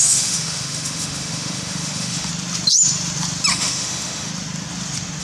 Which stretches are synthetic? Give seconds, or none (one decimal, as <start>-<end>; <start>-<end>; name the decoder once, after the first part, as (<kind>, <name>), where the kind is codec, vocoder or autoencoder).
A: 0.0-2.3 (autoencoder, DAC-VAE); 3.5-4.3